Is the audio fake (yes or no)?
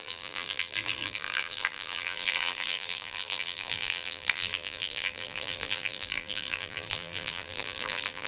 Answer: yes